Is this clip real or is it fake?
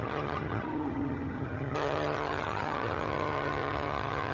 fake